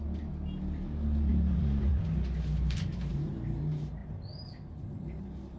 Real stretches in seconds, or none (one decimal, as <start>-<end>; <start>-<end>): 0.0-1.3; 1.9-3.1; 3.6-5.6